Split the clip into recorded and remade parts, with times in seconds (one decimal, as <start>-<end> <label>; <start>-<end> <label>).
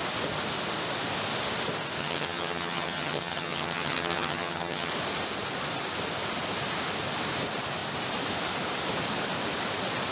0.0-2.0 recorded; 2.0-4.9 remade; 4.9-10.1 recorded